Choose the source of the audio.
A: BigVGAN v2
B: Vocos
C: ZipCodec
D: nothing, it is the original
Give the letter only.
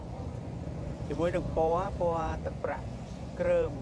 B